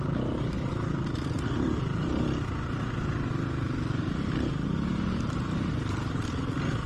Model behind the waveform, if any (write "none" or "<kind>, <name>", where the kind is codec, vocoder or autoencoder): none